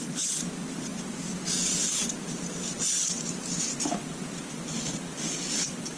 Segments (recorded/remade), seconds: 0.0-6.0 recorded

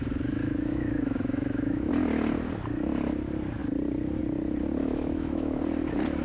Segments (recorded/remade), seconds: 0.0-0.4 recorded; 0.4-1.9 remade; 1.9-4.8 recorded; 4.8-5.6 remade; 5.6-6.2 recorded